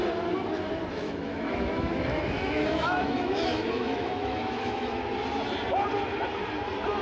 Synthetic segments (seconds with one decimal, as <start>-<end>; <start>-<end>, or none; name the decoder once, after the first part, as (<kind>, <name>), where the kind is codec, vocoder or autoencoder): 0.9-5.1 (autoencoder, DAC-VAE)

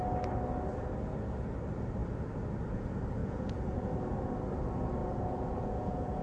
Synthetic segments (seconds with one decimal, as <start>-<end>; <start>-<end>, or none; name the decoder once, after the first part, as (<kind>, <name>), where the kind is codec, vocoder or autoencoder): 3.2-3.9 (vocoder, Vocos); 5.0-6.2

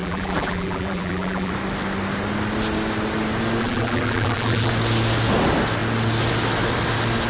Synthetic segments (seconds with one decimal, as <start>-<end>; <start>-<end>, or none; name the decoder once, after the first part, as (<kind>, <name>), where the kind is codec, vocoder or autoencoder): 0.0-1.5 (vocoder, BigVGAN v2); 3.6-4.7

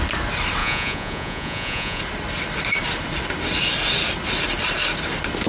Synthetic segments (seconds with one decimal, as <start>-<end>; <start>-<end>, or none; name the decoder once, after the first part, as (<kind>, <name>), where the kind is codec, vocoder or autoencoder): 0.6-2.0 (vocoder, Vocos)

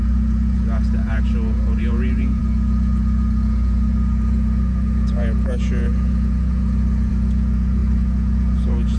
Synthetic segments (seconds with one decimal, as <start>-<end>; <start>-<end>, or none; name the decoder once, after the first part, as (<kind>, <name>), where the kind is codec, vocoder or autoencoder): 0.0-9.0 (vocoder, Vocos)

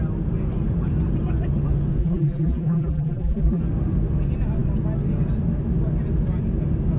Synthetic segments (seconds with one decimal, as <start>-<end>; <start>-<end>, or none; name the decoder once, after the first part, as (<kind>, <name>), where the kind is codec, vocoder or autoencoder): 2.0-3.6 (vocoder, BigVGAN v2)

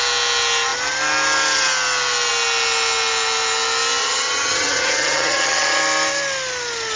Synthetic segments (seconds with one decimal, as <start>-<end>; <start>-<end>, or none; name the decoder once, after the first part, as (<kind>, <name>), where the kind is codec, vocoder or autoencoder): 4.0-5.8 (vocoder, HiFi-GAN)